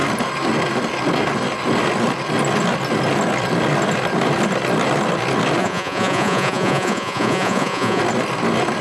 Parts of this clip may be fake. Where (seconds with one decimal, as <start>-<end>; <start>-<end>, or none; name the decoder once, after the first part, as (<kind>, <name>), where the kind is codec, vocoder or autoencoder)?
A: 5.6-8.0 (vocoder, Vocos)